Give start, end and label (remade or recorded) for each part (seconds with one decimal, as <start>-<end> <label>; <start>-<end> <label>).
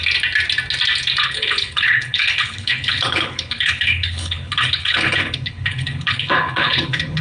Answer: 0.0-1.2 recorded; 1.2-7.2 remade